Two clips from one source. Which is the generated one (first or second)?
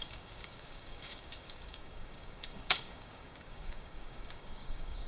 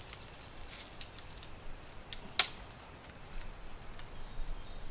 first